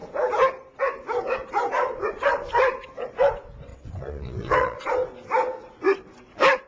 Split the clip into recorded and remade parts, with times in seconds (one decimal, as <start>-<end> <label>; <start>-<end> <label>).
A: 0.0-3.7 recorded; 3.7-4.9 remade; 4.9-6.7 recorded